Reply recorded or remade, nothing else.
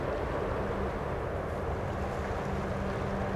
recorded